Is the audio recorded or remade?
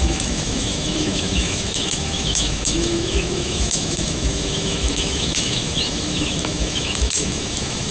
remade